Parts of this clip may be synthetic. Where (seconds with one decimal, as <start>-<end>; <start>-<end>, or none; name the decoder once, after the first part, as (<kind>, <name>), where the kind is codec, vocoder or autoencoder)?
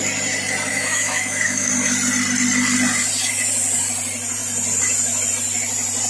0.7-1.7 (autoencoder, DAC-VAE)